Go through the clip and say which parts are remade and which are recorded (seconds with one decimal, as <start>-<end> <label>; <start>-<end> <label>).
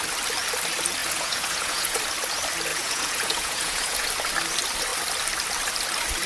0.0-1.0 recorded; 1.0-2.0 remade; 2.0-2.7 recorded; 2.7-4.1 remade; 4.1-6.3 recorded